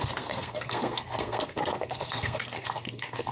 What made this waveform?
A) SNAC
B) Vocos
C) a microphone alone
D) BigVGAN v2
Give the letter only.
A